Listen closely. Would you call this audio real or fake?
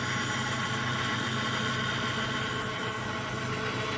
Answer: real